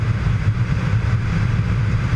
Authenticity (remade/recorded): remade